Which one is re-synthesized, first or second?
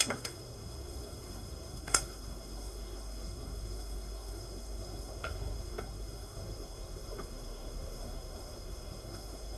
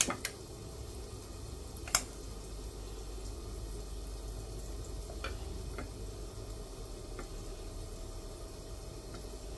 first